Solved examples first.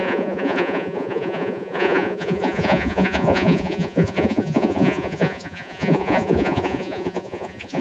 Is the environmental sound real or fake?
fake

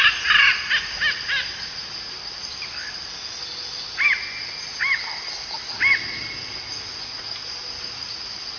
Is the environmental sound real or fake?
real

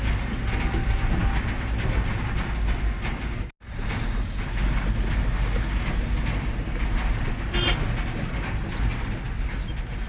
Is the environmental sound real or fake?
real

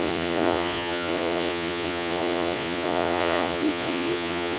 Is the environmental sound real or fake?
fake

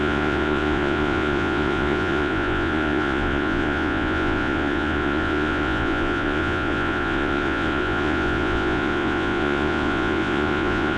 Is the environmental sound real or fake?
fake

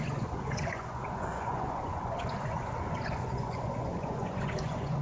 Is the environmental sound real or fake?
fake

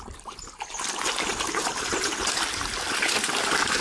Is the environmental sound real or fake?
real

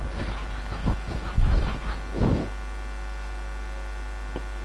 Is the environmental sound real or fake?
real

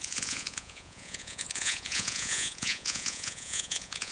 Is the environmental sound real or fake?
fake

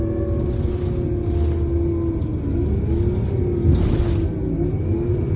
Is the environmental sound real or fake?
real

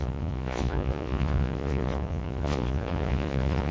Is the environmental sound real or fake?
fake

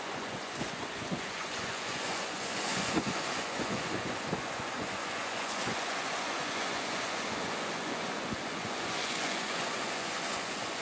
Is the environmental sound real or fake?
fake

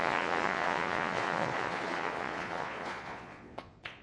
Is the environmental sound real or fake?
fake